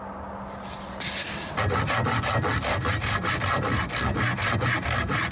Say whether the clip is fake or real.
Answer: real